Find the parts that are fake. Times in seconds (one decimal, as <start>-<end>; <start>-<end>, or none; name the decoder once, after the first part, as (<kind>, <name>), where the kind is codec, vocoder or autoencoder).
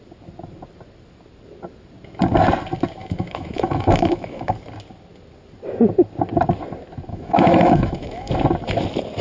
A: 3.0-4.5 (autoencoder, DAC-VAE); 7.1-8.3